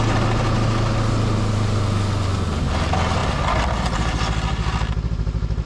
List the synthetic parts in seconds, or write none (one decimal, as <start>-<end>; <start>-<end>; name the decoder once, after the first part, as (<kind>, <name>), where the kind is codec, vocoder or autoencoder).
none